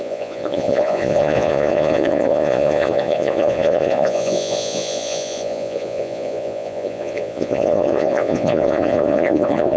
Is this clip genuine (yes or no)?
no